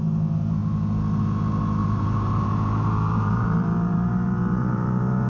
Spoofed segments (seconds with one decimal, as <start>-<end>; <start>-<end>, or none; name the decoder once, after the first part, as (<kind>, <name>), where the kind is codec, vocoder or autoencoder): 1.8-5.3 (vocoder, BigVGAN v2)